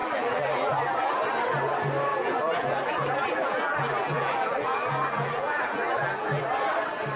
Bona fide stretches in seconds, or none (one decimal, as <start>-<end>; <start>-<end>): 1.2-2.1; 6.4-7.2